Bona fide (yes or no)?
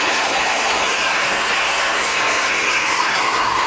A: no